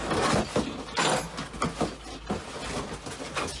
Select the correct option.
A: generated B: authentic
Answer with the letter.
B